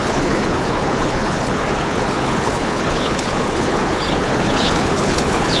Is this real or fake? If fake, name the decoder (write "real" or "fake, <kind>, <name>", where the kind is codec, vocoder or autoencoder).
fake, codec, HILCodec